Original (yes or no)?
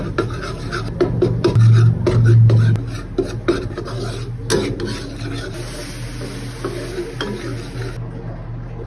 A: yes